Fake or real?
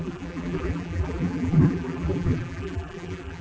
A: fake